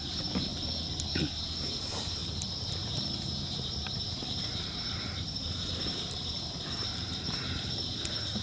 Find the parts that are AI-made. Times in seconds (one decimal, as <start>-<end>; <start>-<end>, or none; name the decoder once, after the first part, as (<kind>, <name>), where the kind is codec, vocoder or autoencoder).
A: 0.0-0.5 (vocoder, BigVGAN v2); 1.1-8.4